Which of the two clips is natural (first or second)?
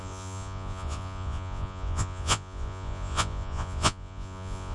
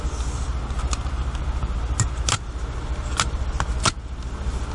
second